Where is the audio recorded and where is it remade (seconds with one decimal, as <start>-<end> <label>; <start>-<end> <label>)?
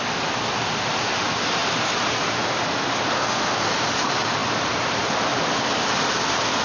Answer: 0.0-3.2 recorded; 3.2-3.7 remade; 3.7-6.6 recorded